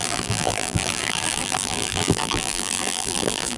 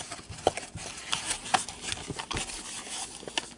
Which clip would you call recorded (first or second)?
second